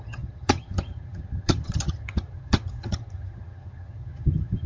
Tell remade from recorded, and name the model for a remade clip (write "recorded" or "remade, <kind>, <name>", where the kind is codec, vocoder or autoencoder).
remade, vocoder, HiFi-GAN